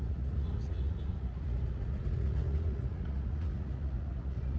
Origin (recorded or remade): remade